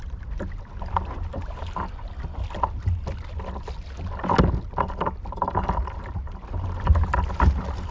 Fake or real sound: real